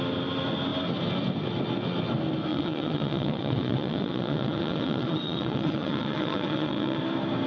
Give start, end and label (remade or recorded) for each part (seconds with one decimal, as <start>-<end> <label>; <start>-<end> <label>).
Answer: 0.0-2.5 recorded; 2.5-7.0 remade; 7.0-7.5 recorded